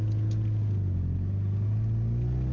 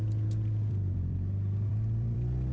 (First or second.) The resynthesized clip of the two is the second